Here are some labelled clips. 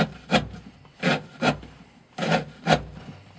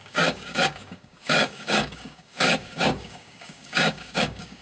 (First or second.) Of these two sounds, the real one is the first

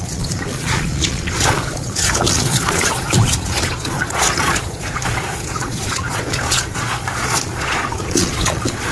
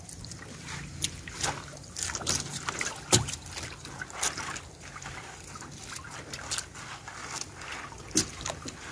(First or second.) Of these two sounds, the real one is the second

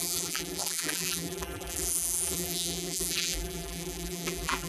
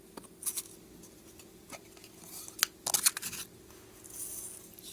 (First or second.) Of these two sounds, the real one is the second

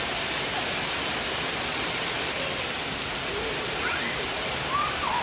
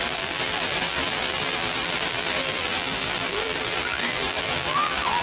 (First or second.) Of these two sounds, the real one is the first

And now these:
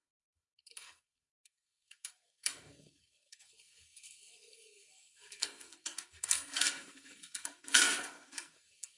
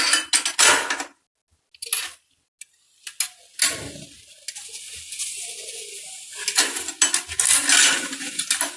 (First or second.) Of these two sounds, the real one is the second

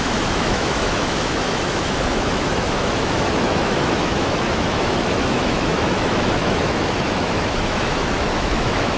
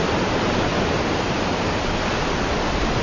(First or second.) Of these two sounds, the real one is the second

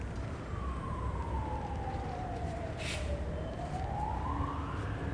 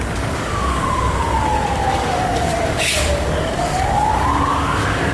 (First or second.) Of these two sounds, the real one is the first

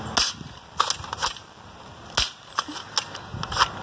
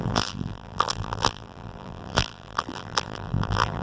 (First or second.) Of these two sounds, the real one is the first